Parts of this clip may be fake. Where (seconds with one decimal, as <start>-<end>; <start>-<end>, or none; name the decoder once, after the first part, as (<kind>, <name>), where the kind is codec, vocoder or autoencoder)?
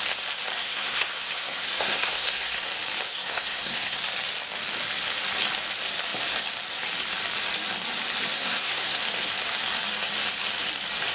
0.6-2.7 (codec, SNAC); 3.1-4.0; 8.3-9.0